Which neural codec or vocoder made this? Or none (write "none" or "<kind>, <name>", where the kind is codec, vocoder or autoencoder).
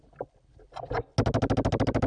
none